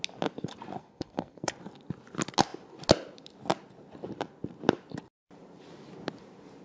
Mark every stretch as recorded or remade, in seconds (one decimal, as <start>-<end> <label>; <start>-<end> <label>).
0.0-0.8 recorded; 0.8-1.5 remade; 1.5-6.6 recorded